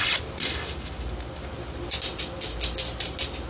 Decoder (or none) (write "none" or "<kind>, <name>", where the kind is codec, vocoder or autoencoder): none